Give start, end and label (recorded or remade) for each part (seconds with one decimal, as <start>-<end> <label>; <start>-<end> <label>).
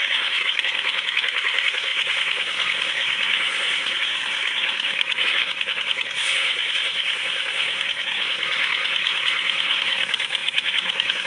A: 0.0-11.3 remade